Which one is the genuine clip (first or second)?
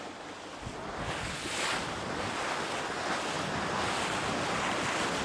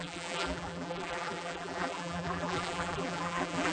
first